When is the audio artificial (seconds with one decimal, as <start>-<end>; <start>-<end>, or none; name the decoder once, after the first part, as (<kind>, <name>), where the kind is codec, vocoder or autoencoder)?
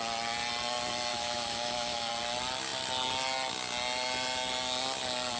1.1-2.1 (autoencoder, DAC-VAE)